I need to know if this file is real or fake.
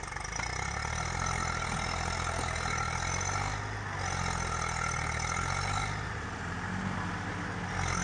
real